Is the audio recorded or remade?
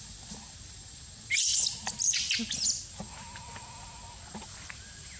recorded